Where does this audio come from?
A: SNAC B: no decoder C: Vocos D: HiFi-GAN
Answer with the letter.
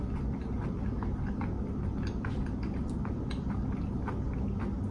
B